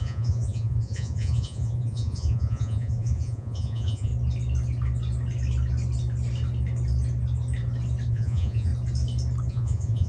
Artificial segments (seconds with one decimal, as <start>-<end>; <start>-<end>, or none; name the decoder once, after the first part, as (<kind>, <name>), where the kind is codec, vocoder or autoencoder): 0.0-4.1 (vocoder, Vocos); 8.1-8.7; 9.5-10.1